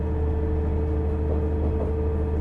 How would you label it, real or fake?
real